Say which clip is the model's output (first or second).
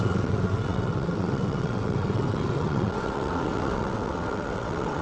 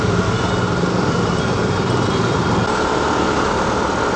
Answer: first